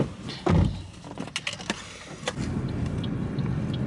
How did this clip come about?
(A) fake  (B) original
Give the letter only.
B